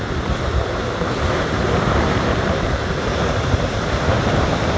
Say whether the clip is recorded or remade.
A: remade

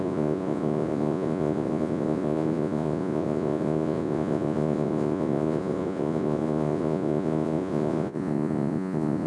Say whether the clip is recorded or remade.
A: remade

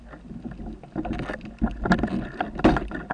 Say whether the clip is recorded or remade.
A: recorded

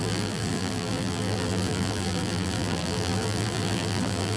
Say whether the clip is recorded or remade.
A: remade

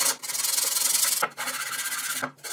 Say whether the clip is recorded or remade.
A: recorded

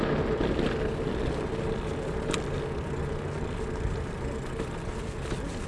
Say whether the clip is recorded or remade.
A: recorded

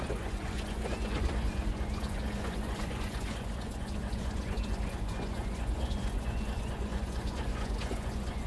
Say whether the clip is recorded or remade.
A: remade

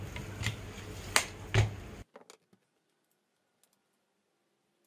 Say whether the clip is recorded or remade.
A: recorded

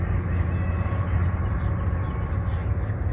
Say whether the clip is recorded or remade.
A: recorded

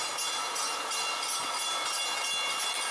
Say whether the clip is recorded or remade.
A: recorded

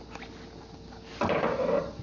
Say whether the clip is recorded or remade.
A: recorded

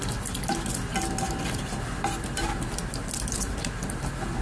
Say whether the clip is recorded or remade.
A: recorded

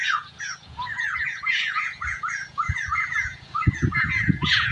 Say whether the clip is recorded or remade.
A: remade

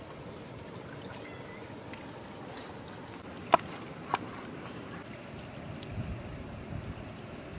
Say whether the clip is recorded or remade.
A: recorded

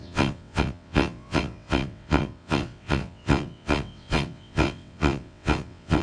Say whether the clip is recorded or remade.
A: remade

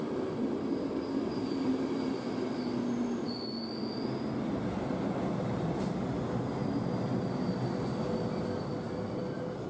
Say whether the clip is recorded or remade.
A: recorded